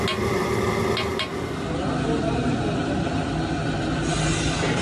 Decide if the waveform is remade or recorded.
recorded